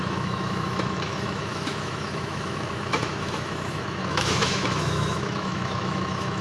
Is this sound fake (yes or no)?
yes